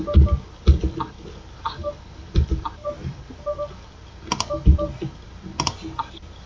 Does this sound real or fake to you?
fake